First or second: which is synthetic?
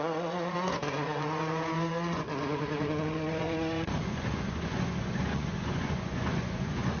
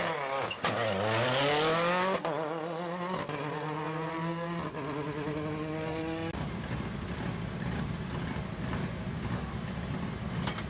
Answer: first